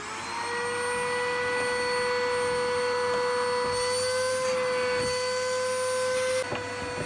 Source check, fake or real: real